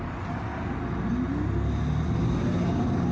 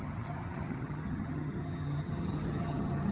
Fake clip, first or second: second